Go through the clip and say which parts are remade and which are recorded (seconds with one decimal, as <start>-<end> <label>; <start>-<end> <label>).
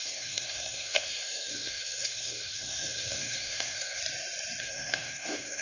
0.0-4.0 remade; 4.0-4.6 recorded; 4.6-5.6 remade